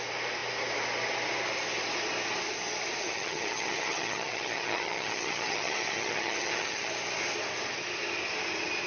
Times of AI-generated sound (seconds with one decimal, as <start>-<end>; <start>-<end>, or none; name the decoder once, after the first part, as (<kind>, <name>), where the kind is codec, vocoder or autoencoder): 3.0-6.9 (vocoder, HiFi-GAN)